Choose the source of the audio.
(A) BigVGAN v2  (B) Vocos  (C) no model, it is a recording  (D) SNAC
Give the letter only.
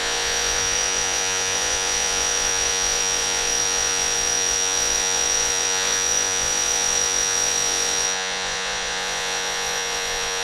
B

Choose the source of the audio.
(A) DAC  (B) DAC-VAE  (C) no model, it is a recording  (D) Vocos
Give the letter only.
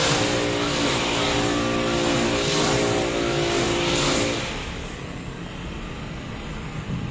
C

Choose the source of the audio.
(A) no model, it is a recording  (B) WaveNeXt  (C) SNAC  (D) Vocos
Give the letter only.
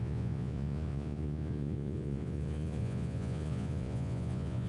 D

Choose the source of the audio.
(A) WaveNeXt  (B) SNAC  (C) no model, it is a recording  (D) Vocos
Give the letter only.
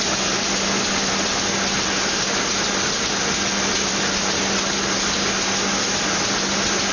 C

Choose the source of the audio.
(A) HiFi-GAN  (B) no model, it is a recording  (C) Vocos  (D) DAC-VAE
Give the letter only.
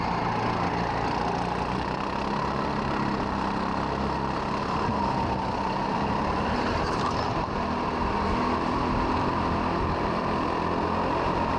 B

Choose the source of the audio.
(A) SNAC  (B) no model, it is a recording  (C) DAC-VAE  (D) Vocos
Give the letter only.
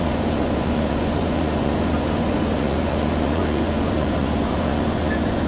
D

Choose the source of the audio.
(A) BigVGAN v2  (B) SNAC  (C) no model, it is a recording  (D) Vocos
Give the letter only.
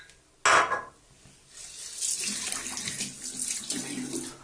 C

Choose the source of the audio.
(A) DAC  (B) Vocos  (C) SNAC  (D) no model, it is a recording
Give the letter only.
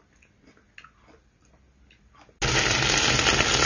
D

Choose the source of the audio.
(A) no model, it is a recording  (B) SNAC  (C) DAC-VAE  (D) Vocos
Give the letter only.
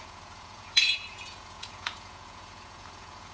D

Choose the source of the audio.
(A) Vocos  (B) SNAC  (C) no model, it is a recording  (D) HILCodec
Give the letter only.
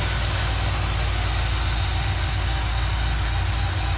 C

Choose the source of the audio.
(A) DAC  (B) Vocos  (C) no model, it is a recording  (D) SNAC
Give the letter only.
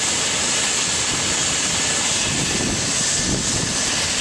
C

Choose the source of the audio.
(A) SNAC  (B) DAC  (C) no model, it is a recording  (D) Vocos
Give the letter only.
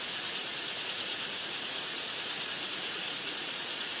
D